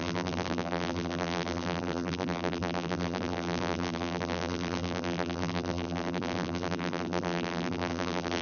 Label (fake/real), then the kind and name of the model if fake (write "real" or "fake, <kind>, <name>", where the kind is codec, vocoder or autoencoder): fake, vocoder, BigVGAN v2